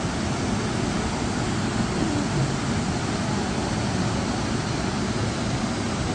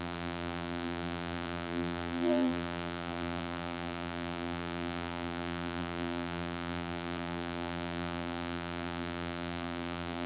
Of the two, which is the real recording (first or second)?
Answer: first